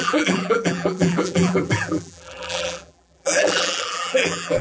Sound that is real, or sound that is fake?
fake